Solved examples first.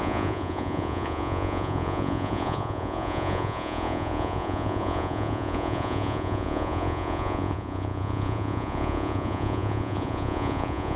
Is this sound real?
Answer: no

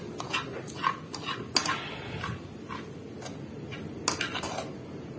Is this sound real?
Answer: yes